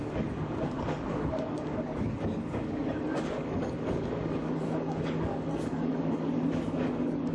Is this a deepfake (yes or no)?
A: yes